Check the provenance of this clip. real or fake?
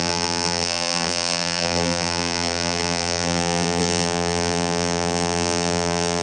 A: fake